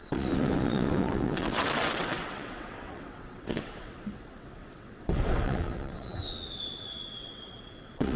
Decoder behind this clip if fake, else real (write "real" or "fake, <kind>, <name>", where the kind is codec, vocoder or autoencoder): fake, vocoder, WaveNeXt